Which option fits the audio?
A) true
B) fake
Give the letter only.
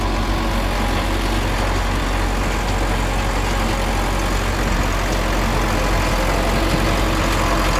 A